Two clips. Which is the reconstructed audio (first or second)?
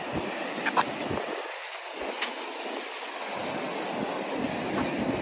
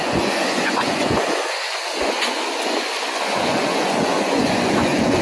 second